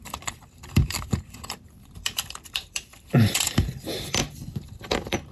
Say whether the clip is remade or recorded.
remade